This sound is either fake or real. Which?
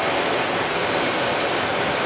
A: real